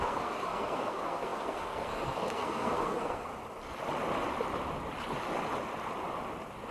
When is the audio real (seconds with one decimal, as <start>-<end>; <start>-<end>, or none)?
3.3-6.7